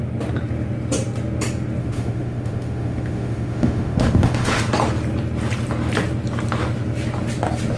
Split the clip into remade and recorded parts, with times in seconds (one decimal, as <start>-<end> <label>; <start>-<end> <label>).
0.0-1.8 recorded; 1.8-4.6 remade; 4.6-7.8 recorded